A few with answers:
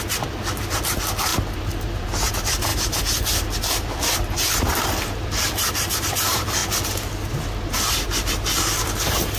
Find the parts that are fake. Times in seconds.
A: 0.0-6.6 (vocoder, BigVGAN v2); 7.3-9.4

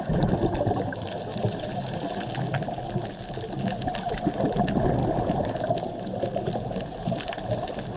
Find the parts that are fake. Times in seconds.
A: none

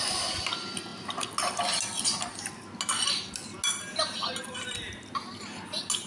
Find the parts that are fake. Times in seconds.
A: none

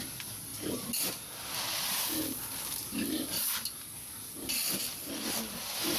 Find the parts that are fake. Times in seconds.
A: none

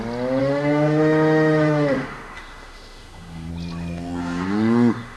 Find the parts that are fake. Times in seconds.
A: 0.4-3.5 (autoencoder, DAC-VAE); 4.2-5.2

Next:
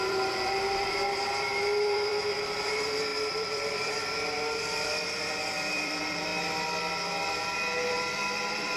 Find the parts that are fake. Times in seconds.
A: 0.0-6.3 (vocoder, BigVGAN v2); 7.4-8.8

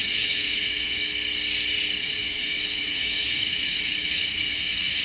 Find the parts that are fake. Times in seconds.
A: 0.0-1.1 (autoencoder, DAC-VAE); 2.0-5.0